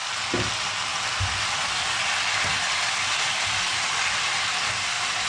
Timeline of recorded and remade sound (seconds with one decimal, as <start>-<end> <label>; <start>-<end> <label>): 0.0-5.3 recorded